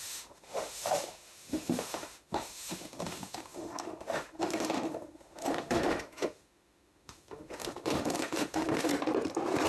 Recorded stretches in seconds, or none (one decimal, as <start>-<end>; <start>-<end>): 8.9-9.7